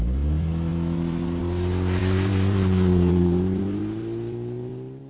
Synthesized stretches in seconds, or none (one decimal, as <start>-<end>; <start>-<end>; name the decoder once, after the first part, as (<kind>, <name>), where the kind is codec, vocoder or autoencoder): 2.0-3.6 (vocoder, BigVGAN v2)